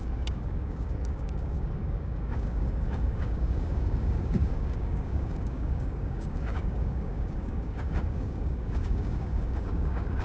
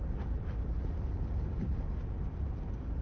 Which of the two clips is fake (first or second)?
first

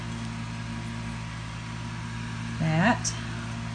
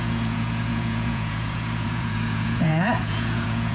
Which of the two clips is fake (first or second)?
second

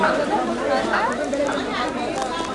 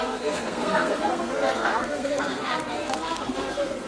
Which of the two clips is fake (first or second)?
second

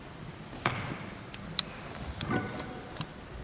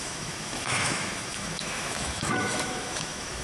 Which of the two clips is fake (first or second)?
second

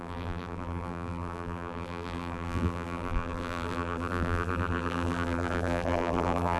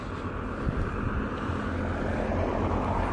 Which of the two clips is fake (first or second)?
first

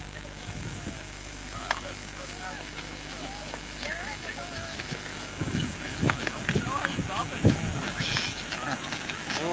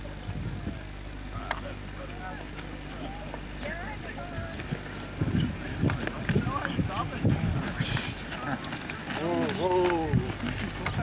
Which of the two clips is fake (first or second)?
first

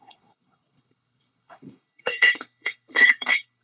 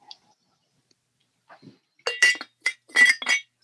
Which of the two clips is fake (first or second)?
first